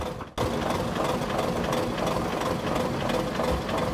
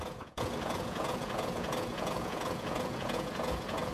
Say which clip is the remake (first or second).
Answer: second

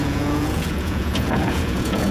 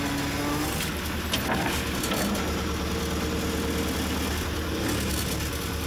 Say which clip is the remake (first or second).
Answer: first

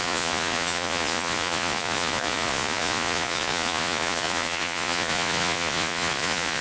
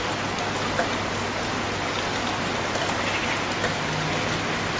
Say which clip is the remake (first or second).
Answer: first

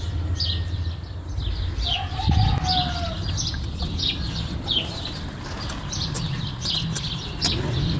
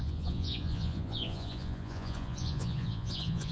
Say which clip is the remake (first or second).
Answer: second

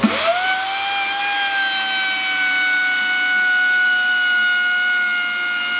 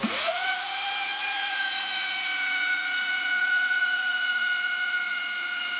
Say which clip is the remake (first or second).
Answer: second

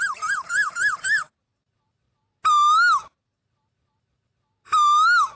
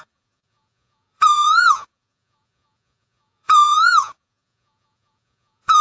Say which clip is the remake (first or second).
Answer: second